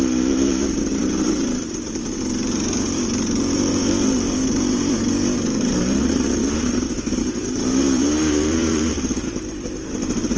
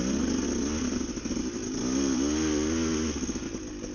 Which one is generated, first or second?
first